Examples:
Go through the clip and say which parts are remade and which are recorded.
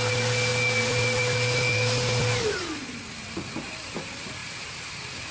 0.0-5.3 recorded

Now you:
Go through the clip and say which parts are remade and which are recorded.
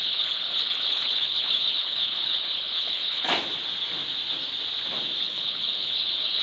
0.0-3.3 remade; 3.3-5.2 recorded; 5.2-6.4 remade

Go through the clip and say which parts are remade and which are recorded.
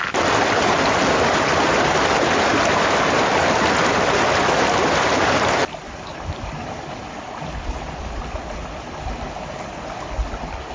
0.0-10.7 recorded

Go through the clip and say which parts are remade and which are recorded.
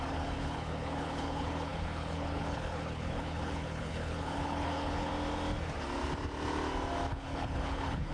0.0-5.1 remade; 5.1-7.1 recorded; 7.1-8.1 remade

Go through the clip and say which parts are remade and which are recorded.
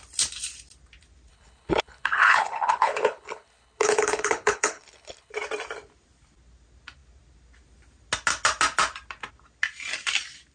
0.0-1.3 recorded; 1.3-5.3 remade; 5.3-10.5 recorded